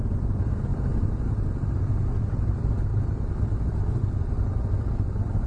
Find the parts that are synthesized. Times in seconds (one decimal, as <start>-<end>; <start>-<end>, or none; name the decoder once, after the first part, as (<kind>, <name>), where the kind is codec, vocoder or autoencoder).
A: none